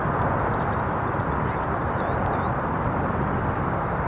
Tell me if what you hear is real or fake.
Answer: fake